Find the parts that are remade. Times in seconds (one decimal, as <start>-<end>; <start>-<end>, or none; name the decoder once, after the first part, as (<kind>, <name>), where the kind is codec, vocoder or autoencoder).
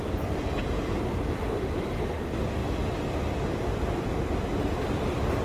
0.0-2.6 (vocoder, BigVGAN v2); 4.1-5.4